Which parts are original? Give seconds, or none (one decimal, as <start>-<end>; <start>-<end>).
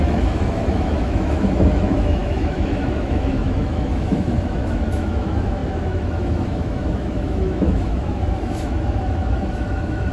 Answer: none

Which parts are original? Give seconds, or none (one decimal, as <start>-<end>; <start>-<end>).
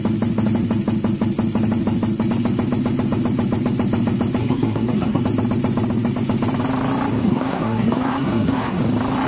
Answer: 0.0-4.4; 5.2-7.2; 8.8-9.3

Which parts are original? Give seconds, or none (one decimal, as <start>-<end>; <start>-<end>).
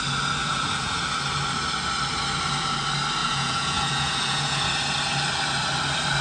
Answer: 0.0-0.4; 1.0-3.2; 4.7-6.2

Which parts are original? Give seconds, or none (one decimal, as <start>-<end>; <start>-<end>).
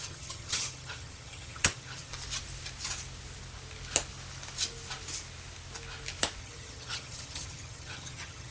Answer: 2.1-6.4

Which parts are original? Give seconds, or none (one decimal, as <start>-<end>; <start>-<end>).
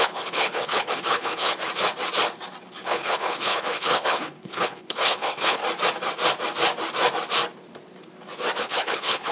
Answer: 1.5-2.8; 5.6-8.6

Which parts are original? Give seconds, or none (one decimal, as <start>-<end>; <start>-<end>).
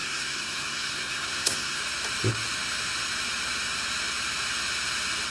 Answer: 1.8-5.3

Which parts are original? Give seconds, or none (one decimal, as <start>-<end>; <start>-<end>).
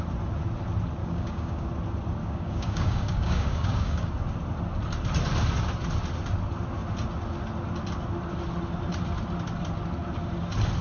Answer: 0.0-1.0; 1.7-2.2; 4.1-10.8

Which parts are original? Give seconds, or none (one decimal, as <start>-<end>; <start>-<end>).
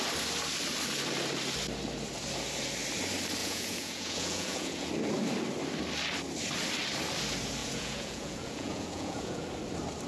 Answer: 0.0-3.4; 4.9-7.6; 9.5-10.1